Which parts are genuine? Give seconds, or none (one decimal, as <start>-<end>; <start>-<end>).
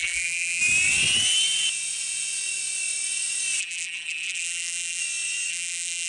0.6-3.6; 5.0-5.5